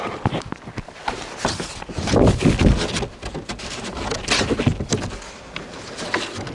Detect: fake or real fake